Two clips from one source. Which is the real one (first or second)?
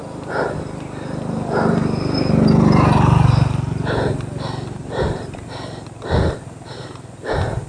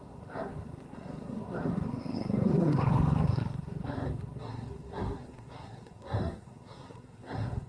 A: first